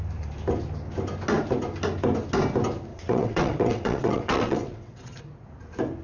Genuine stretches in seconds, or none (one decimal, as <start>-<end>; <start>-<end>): 0.0-2.9; 5.2-6.0

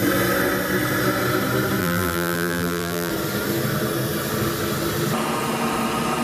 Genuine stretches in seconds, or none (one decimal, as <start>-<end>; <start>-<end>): 0.0-1.8; 3.1-6.2

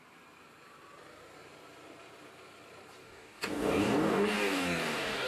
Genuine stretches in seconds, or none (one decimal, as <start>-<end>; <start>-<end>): 0.0-3.0

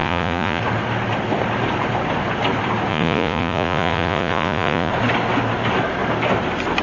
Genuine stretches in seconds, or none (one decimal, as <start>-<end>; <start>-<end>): 0.6-2.9; 4.9-6.8

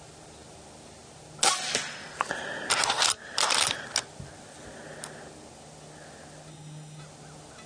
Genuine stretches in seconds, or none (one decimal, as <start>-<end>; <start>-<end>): 0.0-6.5; 7.0-7.7

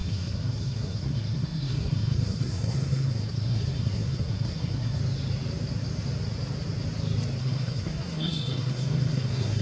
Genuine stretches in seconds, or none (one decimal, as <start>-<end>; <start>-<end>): 5.0-7.4